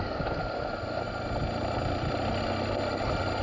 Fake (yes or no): no